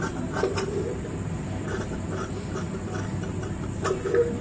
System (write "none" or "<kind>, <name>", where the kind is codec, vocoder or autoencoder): none